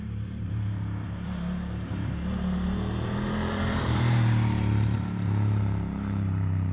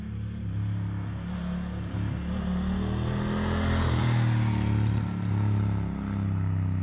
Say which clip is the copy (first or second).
first